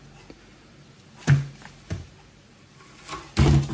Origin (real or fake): real